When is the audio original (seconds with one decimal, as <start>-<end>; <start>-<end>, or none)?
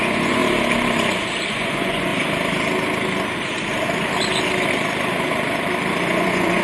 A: 0.4-1.5; 2.1-6.1